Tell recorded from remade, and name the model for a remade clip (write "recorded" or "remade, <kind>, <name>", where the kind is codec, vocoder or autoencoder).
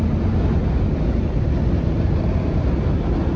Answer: recorded